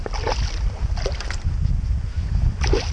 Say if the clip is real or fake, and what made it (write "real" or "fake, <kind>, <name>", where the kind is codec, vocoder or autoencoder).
real